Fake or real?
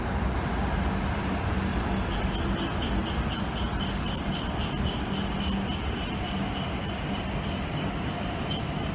real